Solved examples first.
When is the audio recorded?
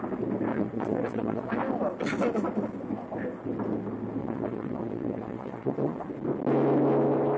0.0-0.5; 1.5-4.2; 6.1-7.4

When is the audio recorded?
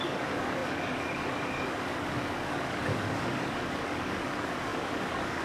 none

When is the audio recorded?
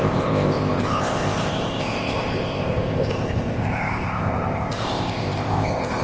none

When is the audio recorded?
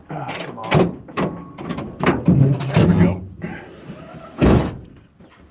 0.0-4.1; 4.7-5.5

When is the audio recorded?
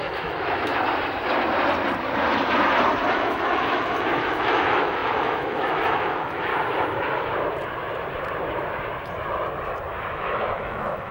0.7-3.1; 6.5-10.1